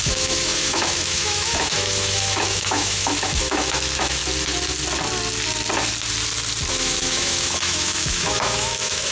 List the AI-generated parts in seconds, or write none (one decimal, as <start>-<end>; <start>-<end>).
0.0-4.2; 6.7-9.1